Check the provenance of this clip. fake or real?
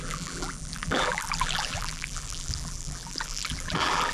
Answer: fake